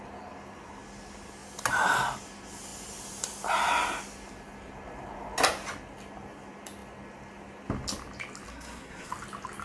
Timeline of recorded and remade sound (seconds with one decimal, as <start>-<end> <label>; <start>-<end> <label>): 0.0-8.5 recorded; 8.5-9.1 remade; 9.1-9.6 recorded